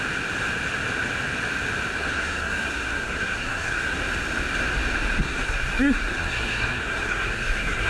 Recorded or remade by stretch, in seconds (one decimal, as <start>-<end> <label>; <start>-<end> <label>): 0.0-2.0 recorded; 2.0-4.0 remade; 4.0-5.2 recorded; 5.2-7.9 remade